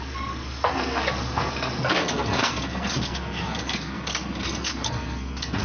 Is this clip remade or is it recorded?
remade